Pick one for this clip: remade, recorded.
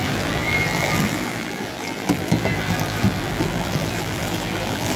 remade